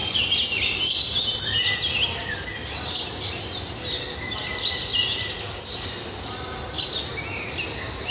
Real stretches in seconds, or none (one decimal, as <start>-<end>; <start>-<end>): 0.0-8.1